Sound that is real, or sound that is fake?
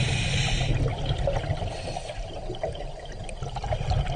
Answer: real